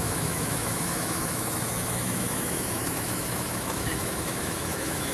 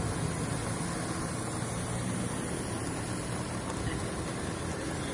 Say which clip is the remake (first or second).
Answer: first